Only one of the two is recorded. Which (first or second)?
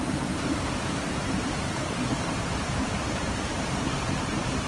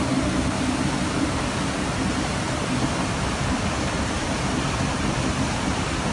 second